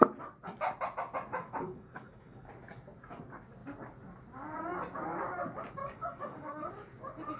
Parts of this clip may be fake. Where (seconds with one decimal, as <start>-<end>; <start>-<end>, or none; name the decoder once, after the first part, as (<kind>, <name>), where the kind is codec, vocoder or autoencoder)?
1.3-2.5 (codec, DAC); 5.8-6.7